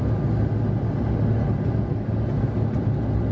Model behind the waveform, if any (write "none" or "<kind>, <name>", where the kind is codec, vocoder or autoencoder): none